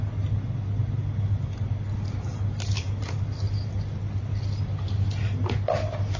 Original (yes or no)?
yes